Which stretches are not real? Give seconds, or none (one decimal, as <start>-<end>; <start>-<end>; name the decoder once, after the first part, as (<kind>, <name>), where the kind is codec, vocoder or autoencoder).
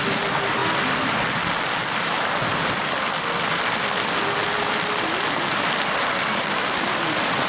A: none